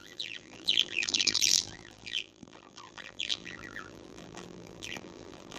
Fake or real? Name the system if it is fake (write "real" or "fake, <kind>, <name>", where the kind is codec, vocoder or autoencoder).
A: fake, vocoder, BigVGAN v2